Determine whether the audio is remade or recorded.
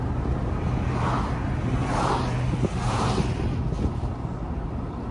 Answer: recorded